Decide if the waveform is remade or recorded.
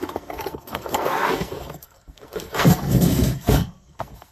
remade